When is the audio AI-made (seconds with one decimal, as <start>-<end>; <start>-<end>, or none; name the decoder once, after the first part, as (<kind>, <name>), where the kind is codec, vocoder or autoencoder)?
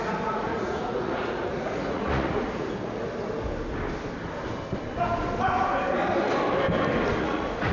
0.0-3.0 (vocoder, Vocos); 7.2-7.7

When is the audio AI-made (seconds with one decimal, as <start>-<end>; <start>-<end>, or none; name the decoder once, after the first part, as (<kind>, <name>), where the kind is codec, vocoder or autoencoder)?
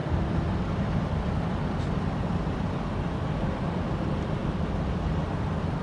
0.0-5.8 (vocoder, BigVGAN v2)